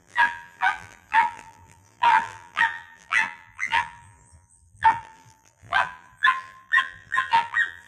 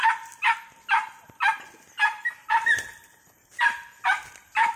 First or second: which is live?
second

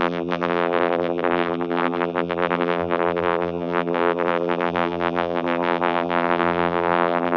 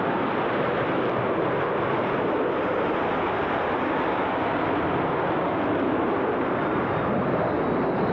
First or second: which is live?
second